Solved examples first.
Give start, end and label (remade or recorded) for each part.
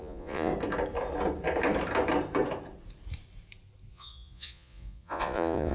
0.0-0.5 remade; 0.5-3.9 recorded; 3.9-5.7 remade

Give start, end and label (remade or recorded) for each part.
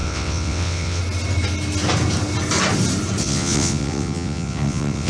0.0-1.0 remade; 1.0-3.2 recorded; 3.2-5.1 remade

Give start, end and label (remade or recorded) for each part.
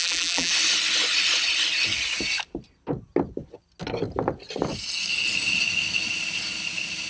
0.0-0.5 remade; 0.5-7.1 recorded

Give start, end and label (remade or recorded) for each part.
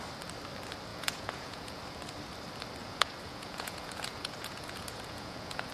0.0-0.9 recorded; 0.9-1.8 remade; 1.8-2.8 recorded; 2.8-5.7 remade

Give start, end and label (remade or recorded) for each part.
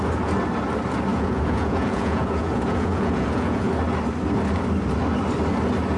0.0-1.1 recorded; 1.1-3.7 remade; 3.7-6.0 recorded